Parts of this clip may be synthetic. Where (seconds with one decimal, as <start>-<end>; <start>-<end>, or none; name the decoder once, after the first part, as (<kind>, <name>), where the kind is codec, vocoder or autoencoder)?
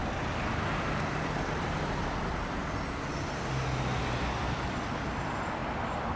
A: 0.8-2.6 (vocoder, BigVGAN v2); 4.0-5.6